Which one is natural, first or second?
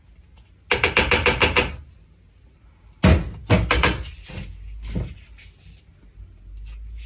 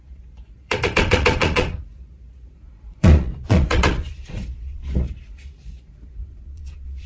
first